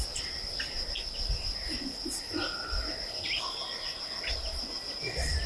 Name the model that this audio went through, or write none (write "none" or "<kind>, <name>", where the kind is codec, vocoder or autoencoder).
none